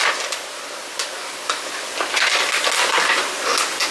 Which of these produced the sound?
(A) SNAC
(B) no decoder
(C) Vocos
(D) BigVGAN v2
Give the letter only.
B